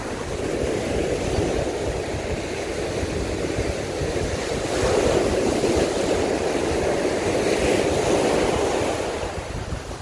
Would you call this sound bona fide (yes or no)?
yes